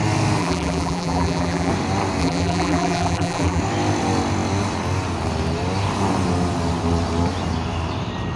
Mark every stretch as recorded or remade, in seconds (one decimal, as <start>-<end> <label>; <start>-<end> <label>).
0.0-0.4 recorded; 0.4-1.7 remade; 1.7-2.2 recorded; 2.2-3.6 remade; 3.6-8.4 recorded